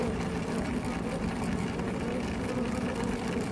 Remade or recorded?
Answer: recorded